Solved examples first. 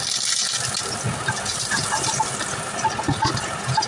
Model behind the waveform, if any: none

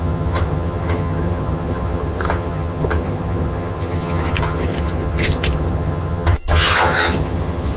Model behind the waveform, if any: vocoder, HiFi-GAN